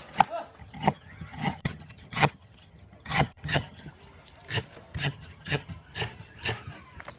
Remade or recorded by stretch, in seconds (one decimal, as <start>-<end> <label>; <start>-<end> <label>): 0.0-0.6 recorded; 0.6-3.9 remade; 3.9-5.0 recorded; 5.0-5.9 remade; 5.9-7.2 recorded